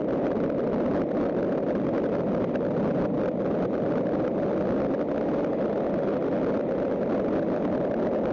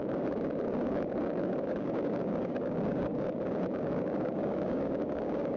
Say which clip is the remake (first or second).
second